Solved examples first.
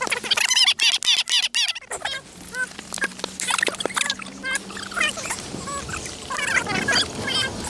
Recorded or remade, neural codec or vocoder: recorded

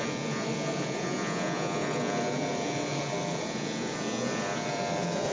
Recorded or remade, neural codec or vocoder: remade, vocoder, Vocos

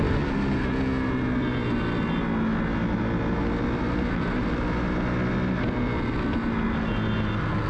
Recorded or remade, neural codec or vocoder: recorded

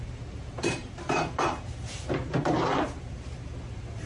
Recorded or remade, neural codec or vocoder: remade, vocoder, BigVGAN v2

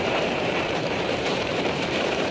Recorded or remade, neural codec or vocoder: remade, vocoder, BigVGAN v2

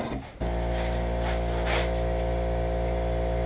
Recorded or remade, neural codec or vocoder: recorded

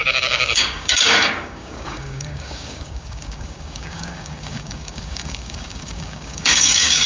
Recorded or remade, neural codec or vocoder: remade, codec, DAC